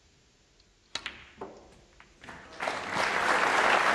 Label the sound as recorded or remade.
recorded